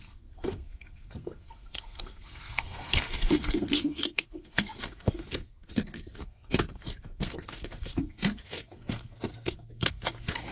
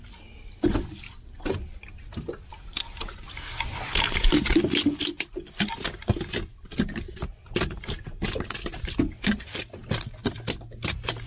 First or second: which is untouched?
second